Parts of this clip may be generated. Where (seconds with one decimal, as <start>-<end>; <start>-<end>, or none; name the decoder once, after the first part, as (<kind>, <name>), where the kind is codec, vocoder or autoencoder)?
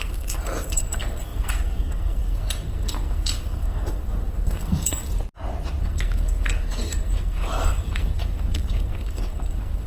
0.0-5.0 (codec, SNAC); 5.8-9.9